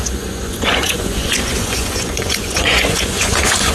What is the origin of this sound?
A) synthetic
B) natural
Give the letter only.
A